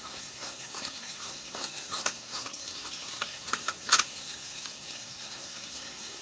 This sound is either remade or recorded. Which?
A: remade